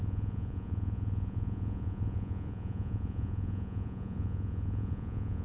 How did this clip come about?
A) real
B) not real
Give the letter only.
B